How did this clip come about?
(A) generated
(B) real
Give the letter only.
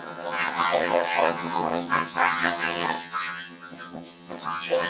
A